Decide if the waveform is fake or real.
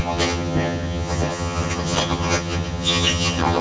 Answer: fake